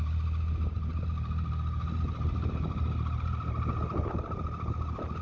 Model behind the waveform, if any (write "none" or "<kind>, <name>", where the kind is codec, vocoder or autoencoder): none